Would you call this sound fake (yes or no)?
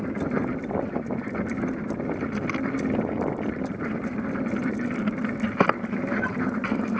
no